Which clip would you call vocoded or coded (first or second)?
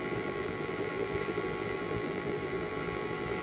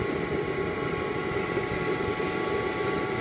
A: first